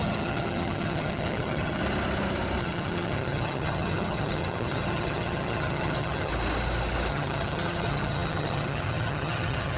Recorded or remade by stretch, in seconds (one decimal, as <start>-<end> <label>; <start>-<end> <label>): 0.0-1.8 remade; 1.8-2.6 recorded; 2.6-6.3 remade; 6.3-7.1 recorded; 7.1-9.8 remade